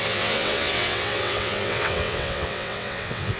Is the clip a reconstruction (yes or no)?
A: yes